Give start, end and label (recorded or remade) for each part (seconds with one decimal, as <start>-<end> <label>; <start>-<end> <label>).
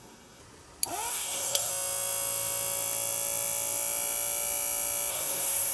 0.0-0.4 remade; 0.4-1.1 recorded; 1.1-1.7 remade; 1.7-5.1 recorded; 5.1-5.7 remade